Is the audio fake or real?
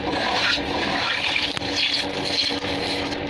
real